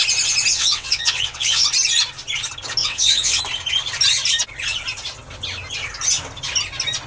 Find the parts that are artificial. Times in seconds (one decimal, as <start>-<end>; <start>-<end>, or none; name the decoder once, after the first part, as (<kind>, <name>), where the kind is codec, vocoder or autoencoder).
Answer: 0.5-1.7 (vocoder, WaveNeXt); 2.8-3.4